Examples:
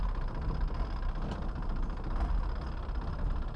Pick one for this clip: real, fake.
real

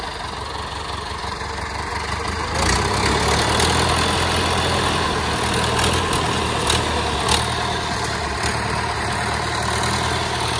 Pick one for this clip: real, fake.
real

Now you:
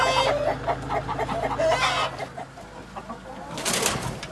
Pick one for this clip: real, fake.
real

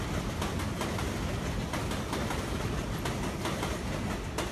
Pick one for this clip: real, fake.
real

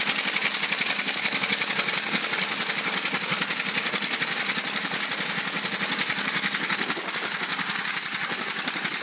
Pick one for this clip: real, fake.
real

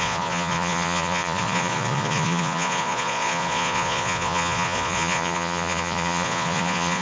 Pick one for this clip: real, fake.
fake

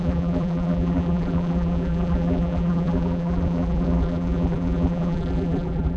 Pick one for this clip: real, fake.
fake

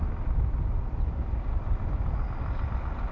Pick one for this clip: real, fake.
real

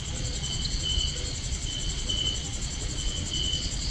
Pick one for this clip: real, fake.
fake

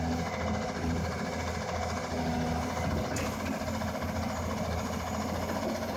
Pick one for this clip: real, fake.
real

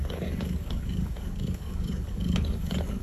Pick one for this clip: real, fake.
fake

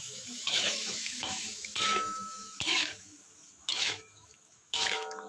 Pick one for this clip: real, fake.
fake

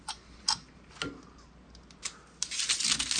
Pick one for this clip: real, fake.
real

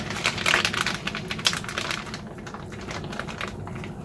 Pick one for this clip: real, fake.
real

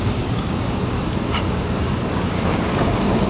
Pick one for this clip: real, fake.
fake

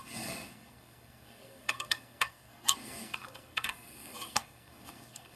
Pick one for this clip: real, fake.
fake